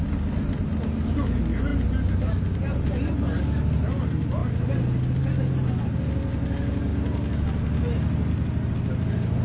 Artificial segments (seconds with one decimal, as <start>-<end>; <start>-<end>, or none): none